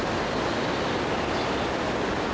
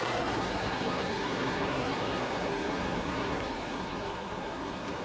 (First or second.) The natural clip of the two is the first